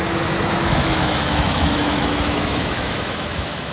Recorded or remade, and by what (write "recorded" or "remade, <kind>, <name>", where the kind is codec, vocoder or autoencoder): remade, autoencoder, DAC-VAE